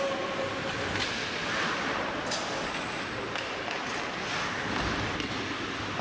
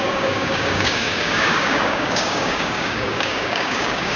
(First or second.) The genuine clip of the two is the first